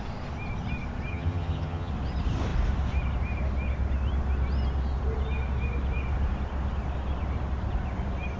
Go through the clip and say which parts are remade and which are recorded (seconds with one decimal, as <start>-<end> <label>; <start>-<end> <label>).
0.0-1.1 recorded; 1.1-1.9 remade; 1.9-8.4 recorded